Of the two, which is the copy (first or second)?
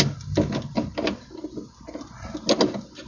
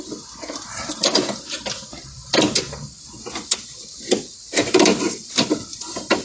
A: second